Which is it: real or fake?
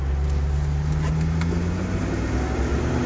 real